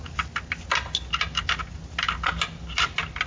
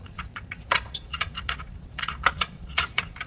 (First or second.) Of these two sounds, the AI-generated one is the second